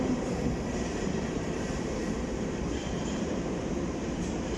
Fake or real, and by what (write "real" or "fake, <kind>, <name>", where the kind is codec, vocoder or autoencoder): fake, vocoder, BigVGAN v2